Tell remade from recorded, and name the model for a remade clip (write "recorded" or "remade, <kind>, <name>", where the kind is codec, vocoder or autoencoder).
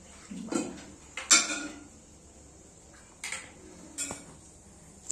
recorded